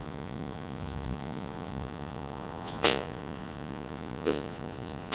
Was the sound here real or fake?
fake